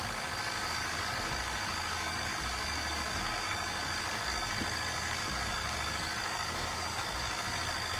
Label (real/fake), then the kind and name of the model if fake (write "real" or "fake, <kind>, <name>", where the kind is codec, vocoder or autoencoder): fake, codec, DAC